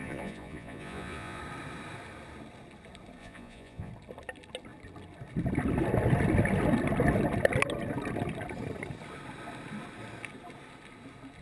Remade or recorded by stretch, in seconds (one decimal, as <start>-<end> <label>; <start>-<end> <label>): 0.0-1.4 remade; 1.4-3.2 recorded; 3.2-3.9 remade; 3.9-11.4 recorded